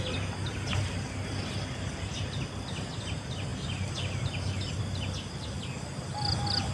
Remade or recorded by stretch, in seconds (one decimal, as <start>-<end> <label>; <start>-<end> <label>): 0.0-6.7 recorded